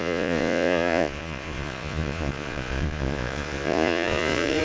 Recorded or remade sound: remade